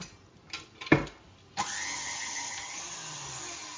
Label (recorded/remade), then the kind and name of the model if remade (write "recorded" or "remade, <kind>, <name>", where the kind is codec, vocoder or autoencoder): recorded